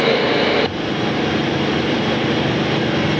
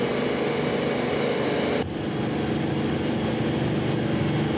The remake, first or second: first